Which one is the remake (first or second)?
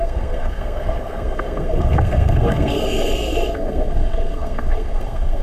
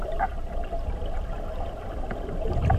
first